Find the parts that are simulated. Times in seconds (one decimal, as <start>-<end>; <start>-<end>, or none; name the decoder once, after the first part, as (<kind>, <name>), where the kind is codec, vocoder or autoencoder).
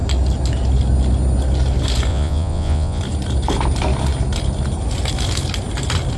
2.1-3.0 (vocoder, Vocos)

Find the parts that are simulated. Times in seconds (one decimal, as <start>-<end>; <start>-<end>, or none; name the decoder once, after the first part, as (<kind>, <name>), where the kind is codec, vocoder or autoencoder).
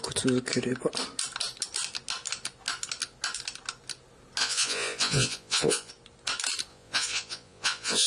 4.4-5.9 (vocoder, Vocos); 6.7-8.1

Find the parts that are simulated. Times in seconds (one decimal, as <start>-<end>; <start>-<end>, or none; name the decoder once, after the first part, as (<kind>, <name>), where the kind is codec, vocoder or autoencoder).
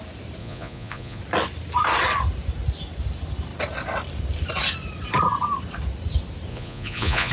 0.4-1.2 (vocoder, Vocos); 6.5-7.3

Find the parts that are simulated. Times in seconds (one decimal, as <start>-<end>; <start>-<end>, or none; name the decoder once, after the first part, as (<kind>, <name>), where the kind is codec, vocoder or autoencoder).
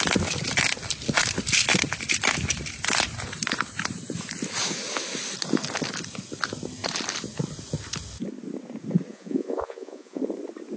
9.1-10.2 (vocoder, Vocos)